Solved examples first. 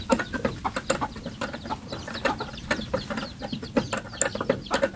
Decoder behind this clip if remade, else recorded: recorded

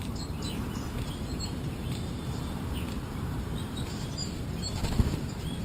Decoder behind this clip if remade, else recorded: remade, vocoder, BigVGAN v2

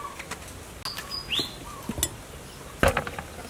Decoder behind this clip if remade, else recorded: recorded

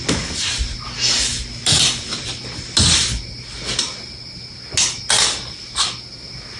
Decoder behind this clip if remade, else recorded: recorded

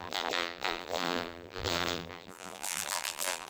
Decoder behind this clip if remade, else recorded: remade, vocoder, BigVGAN v2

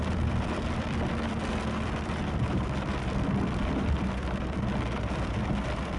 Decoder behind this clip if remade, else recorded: remade, vocoder, BigVGAN v2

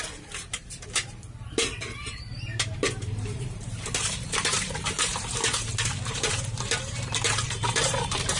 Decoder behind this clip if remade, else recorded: remade, vocoder, BigVGAN v2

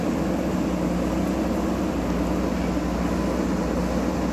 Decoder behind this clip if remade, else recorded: recorded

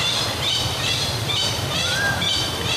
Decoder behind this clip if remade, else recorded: remade, vocoder, BigVGAN v2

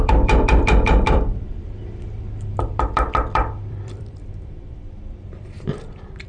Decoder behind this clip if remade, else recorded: remade, vocoder, BigVGAN v2